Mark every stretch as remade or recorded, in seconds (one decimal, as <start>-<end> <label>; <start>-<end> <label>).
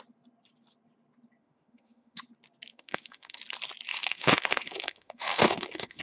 0.0-1.4 recorded; 1.4-2.2 remade; 2.2-2.7 recorded; 2.7-3.4 remade; 3.4-3.9 recorded; 3.9-6.0 remade